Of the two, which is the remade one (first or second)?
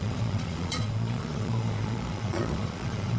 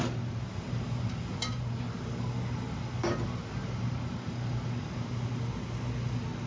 first